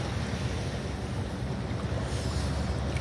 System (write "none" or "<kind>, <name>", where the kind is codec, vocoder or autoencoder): none